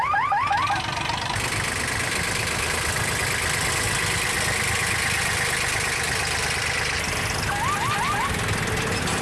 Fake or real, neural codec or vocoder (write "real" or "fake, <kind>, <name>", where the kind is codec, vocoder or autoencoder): real